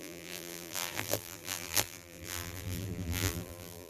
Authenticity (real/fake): fake